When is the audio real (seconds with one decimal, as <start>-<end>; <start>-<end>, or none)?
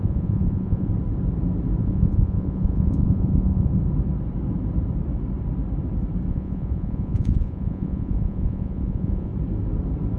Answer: 0.9-1.8; 3.7-6.3; 9.3-10.2